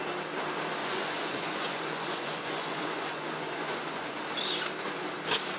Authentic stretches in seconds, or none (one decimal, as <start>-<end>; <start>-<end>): 0.0-0.8; 4.2-5.6